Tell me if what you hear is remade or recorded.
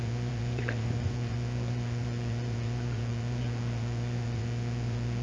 remade